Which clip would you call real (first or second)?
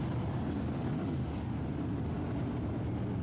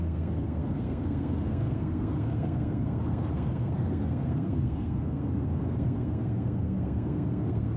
first